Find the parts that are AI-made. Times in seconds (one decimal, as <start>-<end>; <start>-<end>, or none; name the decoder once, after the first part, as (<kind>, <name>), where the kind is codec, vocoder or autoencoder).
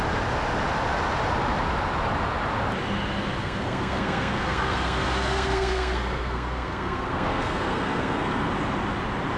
3.4-8.5 (codec, SNAC)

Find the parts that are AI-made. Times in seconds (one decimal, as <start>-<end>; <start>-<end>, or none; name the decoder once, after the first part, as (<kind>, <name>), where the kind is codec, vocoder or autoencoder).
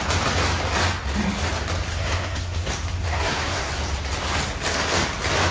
1.9-2.7 (codec, SNAC); 3.1-3.7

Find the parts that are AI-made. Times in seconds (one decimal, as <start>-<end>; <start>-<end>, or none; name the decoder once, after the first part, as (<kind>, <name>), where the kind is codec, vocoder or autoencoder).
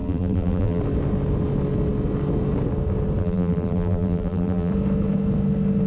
0.0-0.8 (vocoder, BigVGAN v2); 3.2-4.7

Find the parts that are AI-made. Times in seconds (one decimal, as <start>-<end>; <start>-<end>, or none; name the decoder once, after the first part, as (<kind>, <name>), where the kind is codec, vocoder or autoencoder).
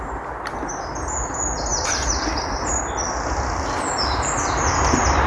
none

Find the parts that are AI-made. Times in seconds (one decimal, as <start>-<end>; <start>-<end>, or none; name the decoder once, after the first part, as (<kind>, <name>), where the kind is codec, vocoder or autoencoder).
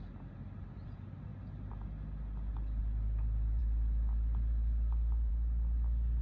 none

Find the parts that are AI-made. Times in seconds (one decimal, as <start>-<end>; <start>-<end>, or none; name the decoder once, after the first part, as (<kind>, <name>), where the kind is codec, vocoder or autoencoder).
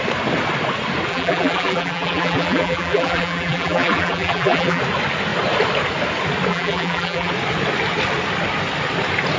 1.1-4.8 (vocoder, BigVGAN v2); 6.5-7.3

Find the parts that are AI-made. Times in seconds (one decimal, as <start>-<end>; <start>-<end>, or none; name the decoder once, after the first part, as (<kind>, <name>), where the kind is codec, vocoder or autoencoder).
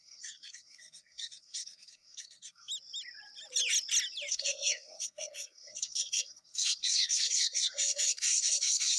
0.0-2.7 (codec, SNAC); 4.3-9.0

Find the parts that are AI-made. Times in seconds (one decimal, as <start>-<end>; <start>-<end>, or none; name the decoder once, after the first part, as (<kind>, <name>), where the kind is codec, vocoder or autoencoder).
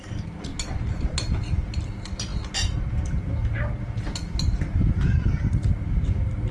none